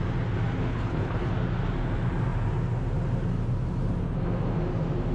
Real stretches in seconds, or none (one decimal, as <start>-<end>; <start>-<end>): 0.0-0.7; 1.3-5.1